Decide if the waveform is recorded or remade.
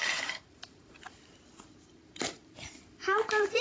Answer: remade